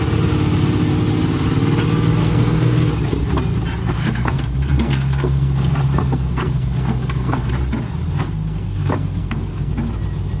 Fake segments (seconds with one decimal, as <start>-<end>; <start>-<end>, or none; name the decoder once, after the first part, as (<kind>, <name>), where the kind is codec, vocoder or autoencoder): 2.2-2.9 (codec, SNAC); 3.8-7.5; 8.2-9.7